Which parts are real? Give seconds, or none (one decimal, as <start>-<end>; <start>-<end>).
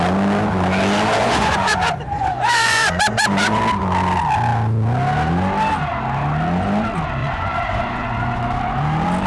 0.0-1.2; 3.6-7.2; 8.4-9.3